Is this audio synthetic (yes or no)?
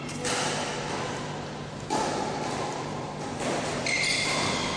no